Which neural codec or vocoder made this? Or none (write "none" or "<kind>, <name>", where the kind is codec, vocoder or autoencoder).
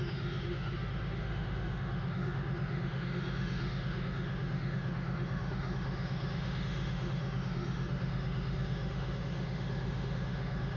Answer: autoencoder, DAC-VAE